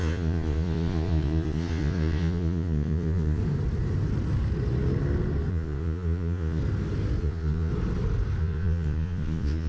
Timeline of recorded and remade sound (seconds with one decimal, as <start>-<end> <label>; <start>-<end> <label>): 0.0-3.4 remade; 3.4-5.5 recorded; 5.5-6.6 remade; 6.6-7.2 recorded; 7.2-7.7 remade; 7.7-8.4 recorded; 8.4-9.7 remade